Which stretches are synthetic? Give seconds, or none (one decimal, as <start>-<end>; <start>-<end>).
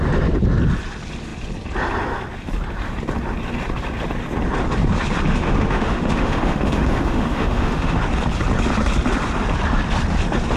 5.3-8.0